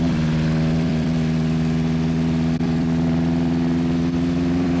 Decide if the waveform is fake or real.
fake